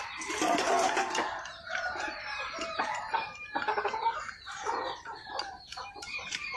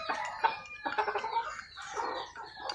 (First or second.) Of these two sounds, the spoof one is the first